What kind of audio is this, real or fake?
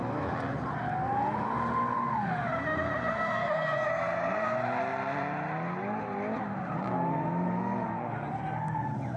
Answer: real